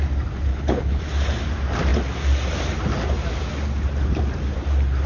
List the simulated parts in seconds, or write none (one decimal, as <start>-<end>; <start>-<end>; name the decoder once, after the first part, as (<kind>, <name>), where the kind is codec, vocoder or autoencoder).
0.5-1.0 (codec, HILCodec)